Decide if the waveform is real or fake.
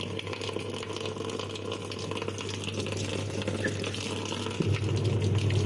real